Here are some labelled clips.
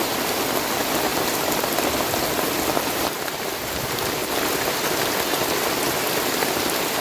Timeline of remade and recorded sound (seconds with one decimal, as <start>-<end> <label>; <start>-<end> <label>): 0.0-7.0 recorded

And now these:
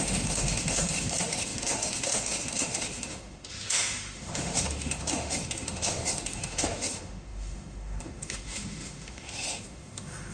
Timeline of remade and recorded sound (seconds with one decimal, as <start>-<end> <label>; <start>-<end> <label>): 0.0-10.3 remade

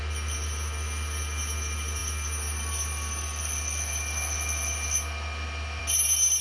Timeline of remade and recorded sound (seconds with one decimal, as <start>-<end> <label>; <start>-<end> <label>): 0.0-6.4 recorded

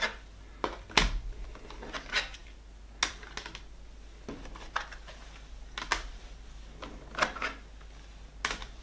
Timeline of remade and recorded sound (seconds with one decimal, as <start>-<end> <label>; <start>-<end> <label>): 0.0-8.8 recorded